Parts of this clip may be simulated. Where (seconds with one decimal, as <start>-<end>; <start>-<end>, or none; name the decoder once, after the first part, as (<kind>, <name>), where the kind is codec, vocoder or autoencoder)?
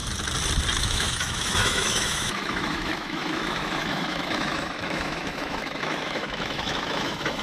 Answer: 0.8-7.4 (autoencoder, DAC-VAE)